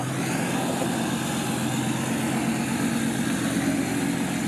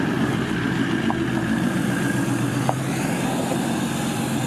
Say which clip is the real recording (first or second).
first